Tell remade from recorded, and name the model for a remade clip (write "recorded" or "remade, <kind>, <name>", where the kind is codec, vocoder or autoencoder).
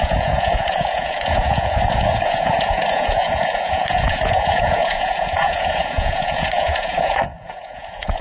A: remade, vocoder, Vocos